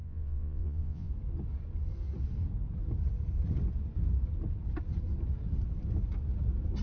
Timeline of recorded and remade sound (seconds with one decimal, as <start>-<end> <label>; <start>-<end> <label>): 0.0-1.1 remade; 1.1-6.8 recorded